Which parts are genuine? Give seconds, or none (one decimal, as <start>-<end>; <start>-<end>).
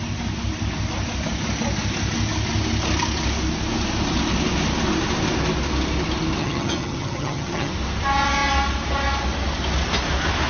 0.0-6.4; 7.7-10.5